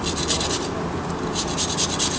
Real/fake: real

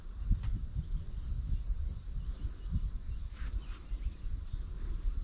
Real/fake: real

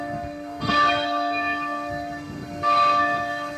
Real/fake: fake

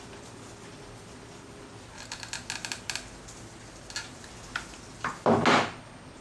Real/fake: real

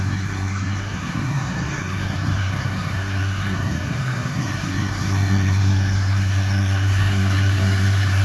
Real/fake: fake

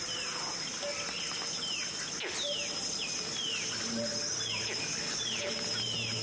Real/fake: real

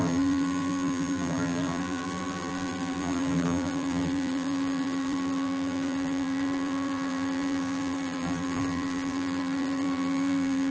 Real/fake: fake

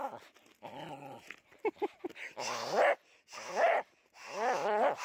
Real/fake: real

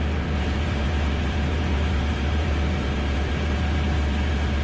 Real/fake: fake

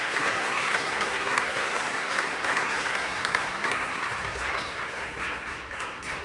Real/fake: fake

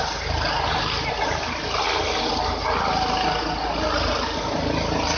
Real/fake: real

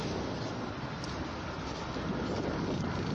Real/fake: real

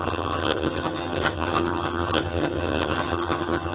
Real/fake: fake